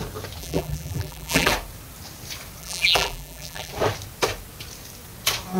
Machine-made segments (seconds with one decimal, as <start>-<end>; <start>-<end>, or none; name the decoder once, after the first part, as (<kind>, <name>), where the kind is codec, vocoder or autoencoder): 0.4-1.5 (vocoder, BigVGAN v2); 2.6-3.7